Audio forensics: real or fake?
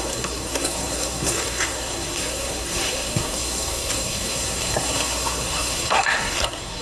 fake